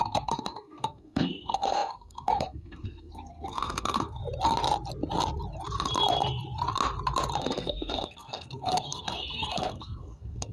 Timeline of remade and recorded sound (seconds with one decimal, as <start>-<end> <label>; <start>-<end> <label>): 0.0-4.2 remade; 4.2-7.4 recorded; 7.4-10.5 remade